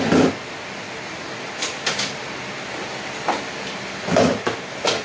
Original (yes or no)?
yes